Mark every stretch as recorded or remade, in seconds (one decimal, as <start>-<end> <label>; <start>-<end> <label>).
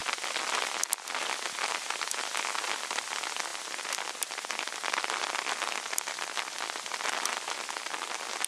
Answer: 0.0-8.5 recorded